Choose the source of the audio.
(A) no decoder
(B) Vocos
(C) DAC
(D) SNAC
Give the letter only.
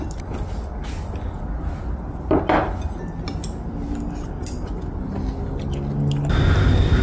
A